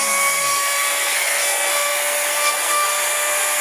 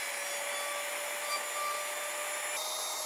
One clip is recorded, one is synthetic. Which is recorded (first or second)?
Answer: second